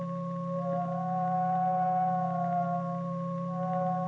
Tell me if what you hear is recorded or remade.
recorded